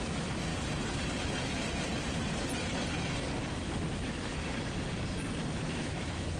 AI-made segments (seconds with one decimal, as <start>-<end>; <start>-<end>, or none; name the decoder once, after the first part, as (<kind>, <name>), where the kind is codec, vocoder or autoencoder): 0.0-0.5 (autoencoder, DAC-VAE); 3.5-4.3; 5.5-6.4